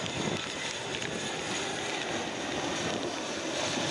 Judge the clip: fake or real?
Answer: real